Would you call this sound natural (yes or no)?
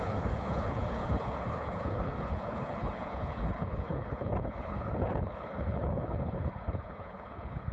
no